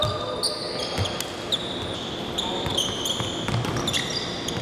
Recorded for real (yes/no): yes